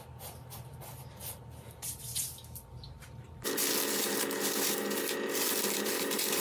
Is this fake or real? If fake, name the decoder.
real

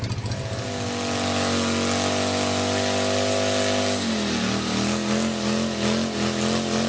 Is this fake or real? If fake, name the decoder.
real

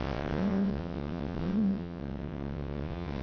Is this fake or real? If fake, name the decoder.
fake, vocoder, WaveNeXt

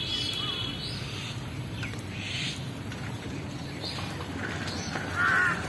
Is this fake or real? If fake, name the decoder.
fake, vocoder, BigVGAN v2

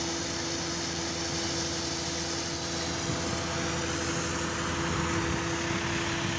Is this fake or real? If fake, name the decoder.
real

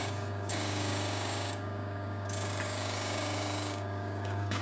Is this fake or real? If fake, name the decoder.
fake, codec, DAC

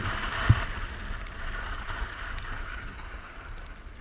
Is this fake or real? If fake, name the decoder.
real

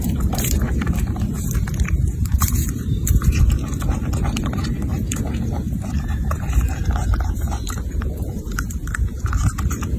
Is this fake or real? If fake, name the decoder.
fake, vocoder, BigVGAN v2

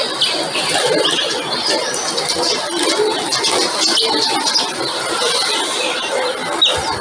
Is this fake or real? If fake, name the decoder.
real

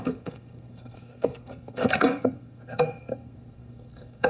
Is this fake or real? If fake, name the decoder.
fake, codec, SNAC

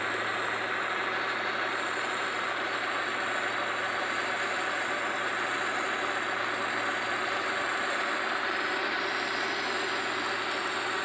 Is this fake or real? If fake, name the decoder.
real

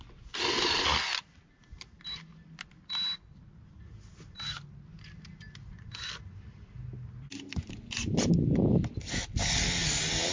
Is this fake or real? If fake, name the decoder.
real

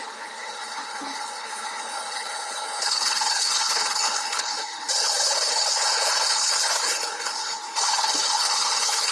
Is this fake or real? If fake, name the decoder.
fake, codec, HILCodec